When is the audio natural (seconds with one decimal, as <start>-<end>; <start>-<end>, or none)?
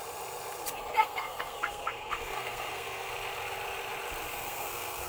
0.0-1.0; 3.1-4.3